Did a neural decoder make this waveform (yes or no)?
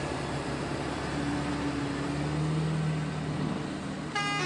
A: no